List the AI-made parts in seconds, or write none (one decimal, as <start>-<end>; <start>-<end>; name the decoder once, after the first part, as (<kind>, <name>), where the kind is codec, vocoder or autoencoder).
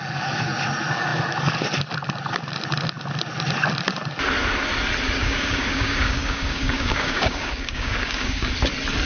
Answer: 5.2-8.5 (codec, DAC)